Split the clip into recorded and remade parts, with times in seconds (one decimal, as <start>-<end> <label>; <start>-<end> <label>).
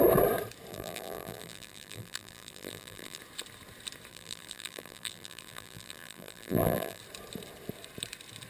0.0-0.7 recorded; 0.7-3.2 remade; 3.2-4.1 recorded; 4.1-7.0 remade; 7.0-8.5 recorded